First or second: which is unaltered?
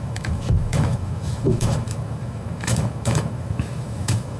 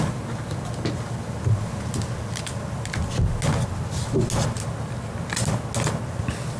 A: second